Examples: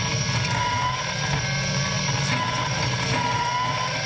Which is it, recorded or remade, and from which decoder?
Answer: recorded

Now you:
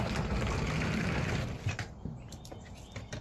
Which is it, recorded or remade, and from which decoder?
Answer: recorded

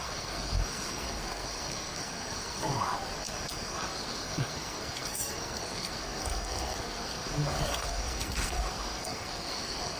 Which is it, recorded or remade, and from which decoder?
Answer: remade, codec, SNAC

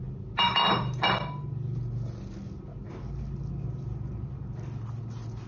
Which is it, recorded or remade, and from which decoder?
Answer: recorded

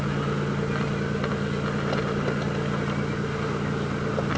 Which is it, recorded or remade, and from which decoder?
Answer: recorded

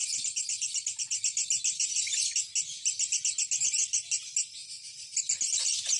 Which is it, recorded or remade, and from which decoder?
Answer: recorded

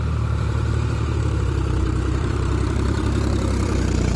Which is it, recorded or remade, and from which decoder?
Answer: remade, vocoder, BigVGAN v2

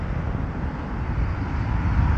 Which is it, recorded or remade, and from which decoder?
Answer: recorded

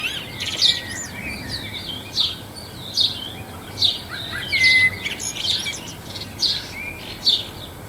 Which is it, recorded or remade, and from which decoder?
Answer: recorded